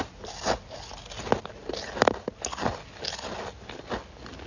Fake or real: real